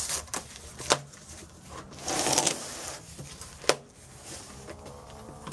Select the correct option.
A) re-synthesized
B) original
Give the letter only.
B